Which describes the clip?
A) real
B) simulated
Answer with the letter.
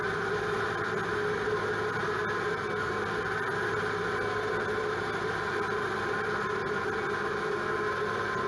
A